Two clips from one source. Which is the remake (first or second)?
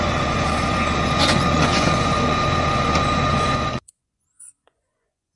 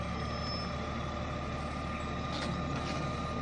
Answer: first